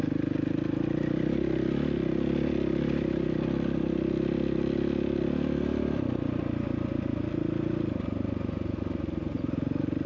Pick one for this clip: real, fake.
real